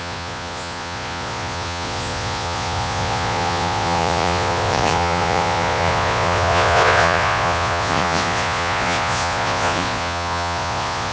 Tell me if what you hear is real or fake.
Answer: fake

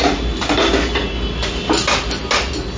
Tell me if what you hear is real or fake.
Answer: real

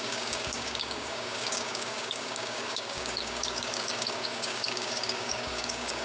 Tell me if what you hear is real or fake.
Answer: fake